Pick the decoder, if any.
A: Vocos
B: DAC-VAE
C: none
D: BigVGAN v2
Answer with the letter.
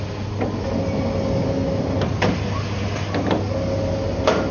C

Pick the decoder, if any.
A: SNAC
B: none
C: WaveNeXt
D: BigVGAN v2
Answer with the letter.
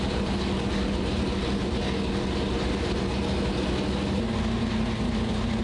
B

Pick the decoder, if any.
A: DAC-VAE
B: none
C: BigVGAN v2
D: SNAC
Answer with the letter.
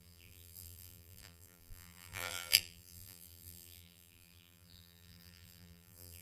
C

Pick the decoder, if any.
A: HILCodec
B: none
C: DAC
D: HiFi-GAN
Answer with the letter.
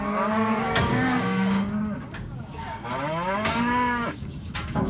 C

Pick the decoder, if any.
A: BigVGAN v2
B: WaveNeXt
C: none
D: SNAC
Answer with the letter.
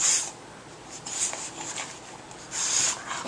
C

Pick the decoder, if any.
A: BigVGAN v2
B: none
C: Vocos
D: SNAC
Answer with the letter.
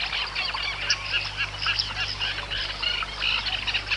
B